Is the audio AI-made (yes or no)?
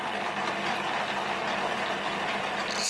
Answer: no